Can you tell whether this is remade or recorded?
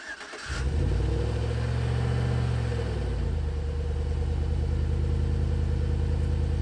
recorded